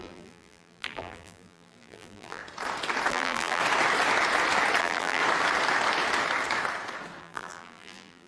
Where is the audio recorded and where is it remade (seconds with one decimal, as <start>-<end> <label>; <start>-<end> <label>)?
0.0-2.4 remade; 2.4-3.1 recorded; 3.1-3.6 remade; 3.6-4.8 recorded; 4.8-5.2 remade; 5.2-7.2 recorded; 7.2-8.3 remade